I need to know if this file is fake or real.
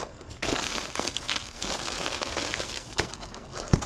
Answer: fake